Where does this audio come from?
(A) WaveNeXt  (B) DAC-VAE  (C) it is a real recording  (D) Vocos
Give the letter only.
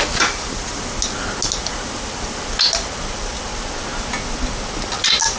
C